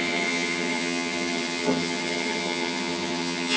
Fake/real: fake